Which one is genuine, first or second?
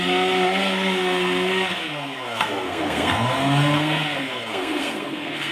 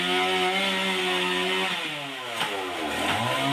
second